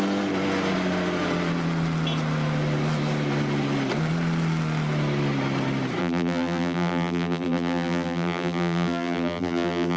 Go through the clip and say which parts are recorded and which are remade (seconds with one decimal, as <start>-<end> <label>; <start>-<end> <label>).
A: 0.0-6.0 recorded; 6.0-10.0 remade